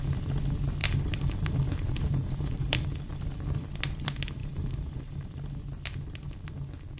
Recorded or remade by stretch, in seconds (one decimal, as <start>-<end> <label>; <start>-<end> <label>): 0.0-0.8 recorded; 0.8-2.9 remade; 2.9-4.4 recorded; 4.4-5.5 remade; 5.5-7.0 recorded